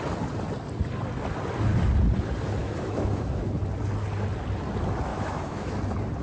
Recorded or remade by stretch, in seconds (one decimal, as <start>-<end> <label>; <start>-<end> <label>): 0.0-2.6 recorded; 2.6-3.6 remade; 3.6-5.1 recorded; 5.1-5.8 remade; 5.8-6.2 recorded